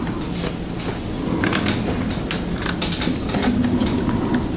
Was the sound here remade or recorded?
recorded